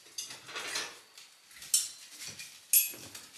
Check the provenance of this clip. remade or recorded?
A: recorded